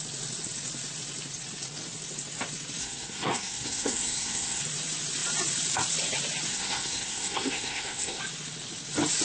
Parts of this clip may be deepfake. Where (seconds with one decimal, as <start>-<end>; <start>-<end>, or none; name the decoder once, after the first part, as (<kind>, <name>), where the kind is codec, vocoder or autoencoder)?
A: 2.8-4.6 (codec, SNAC); 6.5-8.2